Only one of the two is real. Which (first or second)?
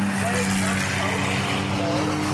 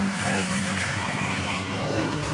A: first